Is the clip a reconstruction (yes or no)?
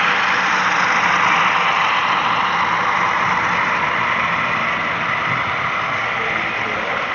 no